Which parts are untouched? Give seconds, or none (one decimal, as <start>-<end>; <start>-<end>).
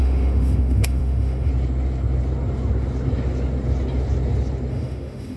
1.5-4.7